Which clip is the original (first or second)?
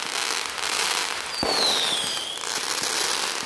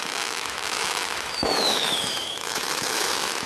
first